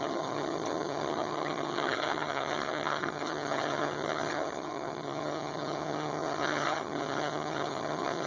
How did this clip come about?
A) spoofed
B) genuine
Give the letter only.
A